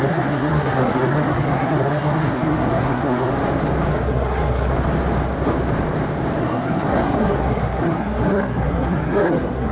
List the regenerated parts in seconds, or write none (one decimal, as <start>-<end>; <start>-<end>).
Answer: 0.0-3.3; 3.9-4.7; 6.4-9.7